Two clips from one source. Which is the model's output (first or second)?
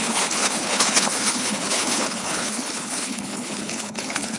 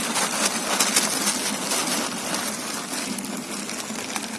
first